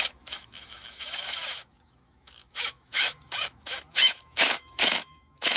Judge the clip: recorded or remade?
remade